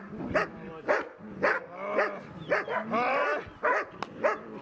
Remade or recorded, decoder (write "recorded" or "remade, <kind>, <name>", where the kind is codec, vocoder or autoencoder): recorded